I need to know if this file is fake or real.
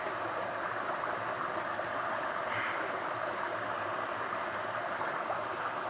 real